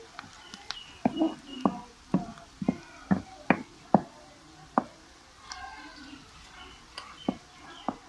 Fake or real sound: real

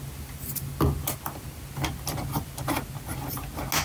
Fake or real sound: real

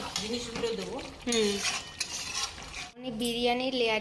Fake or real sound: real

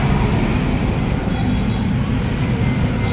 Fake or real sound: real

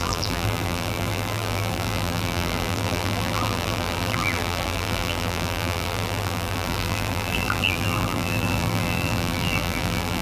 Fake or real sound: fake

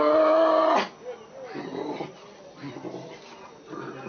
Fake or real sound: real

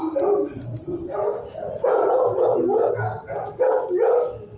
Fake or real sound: real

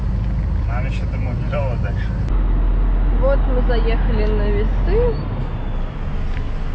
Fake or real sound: real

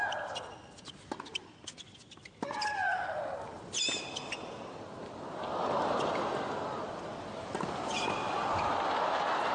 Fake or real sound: real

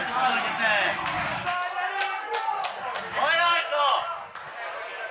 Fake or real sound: real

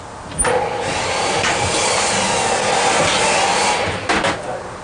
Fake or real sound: real